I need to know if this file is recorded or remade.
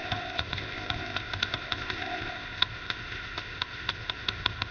remade